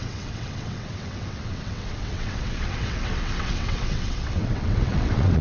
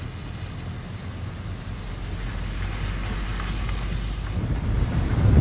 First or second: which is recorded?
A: second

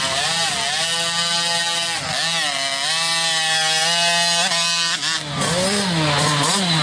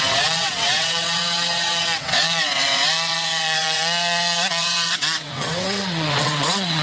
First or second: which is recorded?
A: first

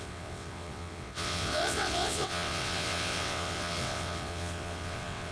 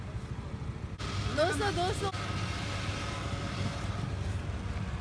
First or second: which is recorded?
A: second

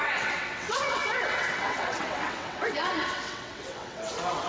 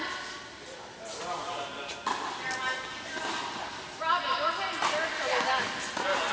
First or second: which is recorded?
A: second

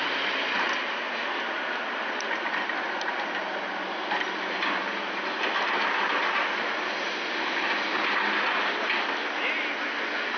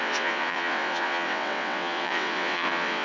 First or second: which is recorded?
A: first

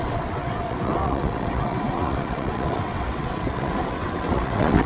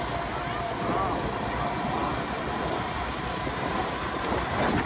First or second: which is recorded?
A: second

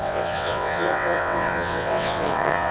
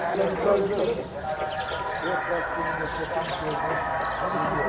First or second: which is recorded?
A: second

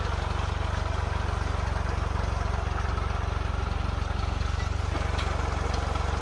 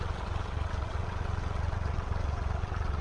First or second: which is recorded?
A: first